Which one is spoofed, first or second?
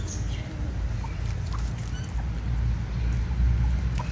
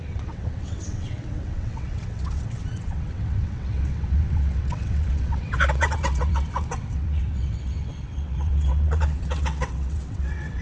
second